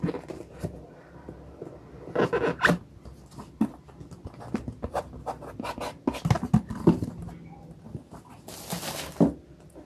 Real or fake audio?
real